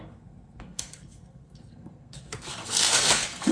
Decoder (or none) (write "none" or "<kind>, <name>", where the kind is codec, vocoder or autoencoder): codec, SNAC